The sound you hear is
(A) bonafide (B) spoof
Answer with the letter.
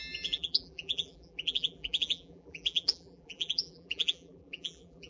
B